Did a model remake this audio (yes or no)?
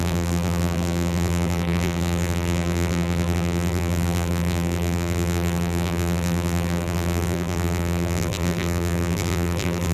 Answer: yes